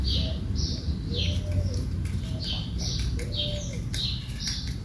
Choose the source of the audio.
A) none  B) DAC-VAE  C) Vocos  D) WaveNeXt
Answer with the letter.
A